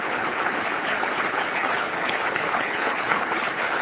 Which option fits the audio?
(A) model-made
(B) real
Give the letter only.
A